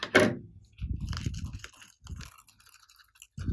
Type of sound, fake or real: real